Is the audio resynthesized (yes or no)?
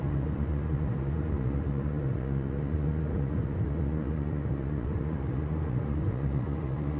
yes